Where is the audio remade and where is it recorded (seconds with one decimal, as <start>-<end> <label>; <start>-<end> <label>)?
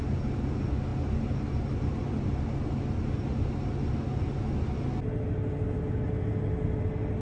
0.0-7.2 recorded